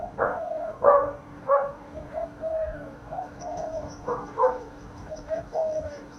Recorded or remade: remade